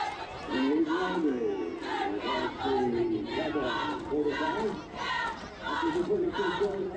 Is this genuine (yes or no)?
yes